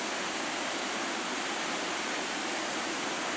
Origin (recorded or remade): recorded